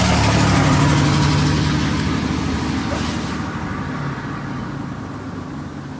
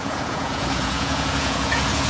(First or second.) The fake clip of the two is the second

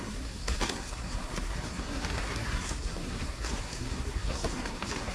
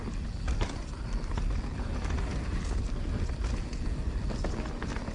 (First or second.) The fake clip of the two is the first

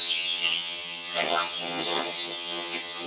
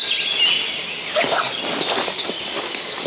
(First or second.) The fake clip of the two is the first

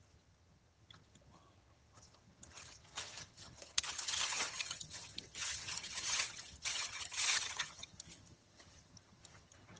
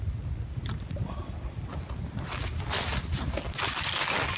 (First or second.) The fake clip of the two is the first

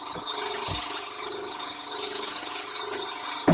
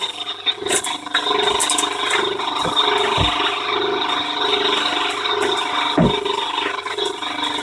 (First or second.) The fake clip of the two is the first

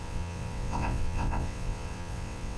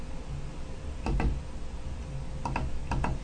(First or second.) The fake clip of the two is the first